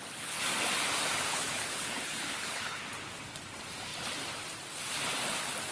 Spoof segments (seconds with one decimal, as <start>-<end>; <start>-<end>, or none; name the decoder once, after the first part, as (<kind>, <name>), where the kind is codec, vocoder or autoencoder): 1.3-2.8 (codec, HILCodec)